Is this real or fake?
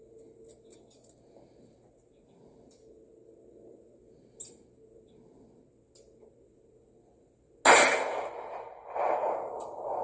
real